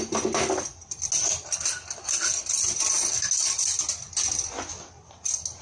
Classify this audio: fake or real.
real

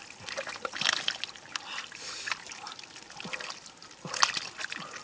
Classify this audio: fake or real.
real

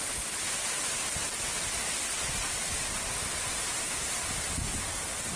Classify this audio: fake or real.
real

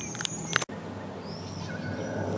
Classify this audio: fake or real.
real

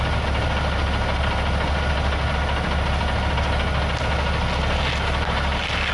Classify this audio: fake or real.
real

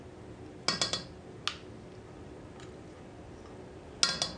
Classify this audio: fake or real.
real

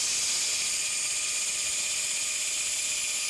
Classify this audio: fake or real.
real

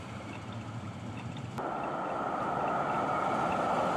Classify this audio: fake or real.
real